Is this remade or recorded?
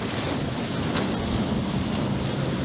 recorded